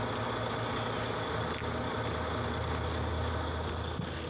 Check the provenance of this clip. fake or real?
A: real